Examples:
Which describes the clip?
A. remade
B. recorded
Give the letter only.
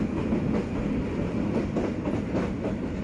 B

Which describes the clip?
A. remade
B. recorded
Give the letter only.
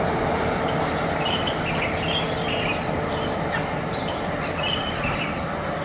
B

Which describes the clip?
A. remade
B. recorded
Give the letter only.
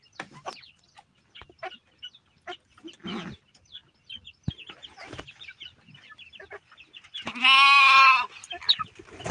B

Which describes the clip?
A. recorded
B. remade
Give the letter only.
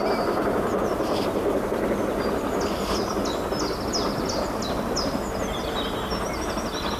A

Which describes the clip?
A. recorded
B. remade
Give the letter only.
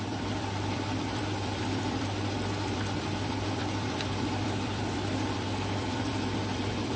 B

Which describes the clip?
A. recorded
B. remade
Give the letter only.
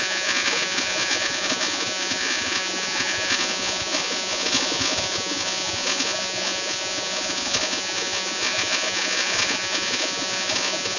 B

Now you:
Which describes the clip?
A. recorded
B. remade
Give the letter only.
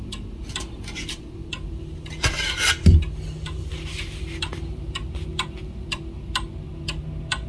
A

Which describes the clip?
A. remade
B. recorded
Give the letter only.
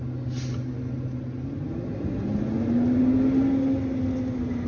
B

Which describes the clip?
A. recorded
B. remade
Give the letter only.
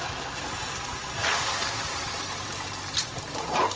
A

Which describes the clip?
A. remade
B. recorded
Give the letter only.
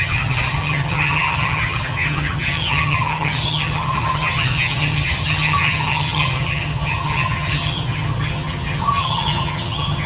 A